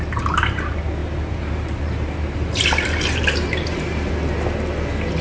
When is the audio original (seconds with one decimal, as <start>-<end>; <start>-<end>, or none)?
0.0-1.0; 4.1-5.2